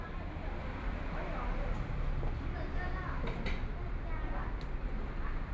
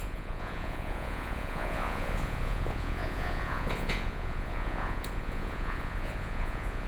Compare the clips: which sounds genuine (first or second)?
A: first